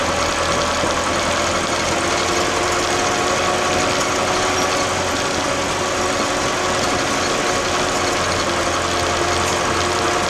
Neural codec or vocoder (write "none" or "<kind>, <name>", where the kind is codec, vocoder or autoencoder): none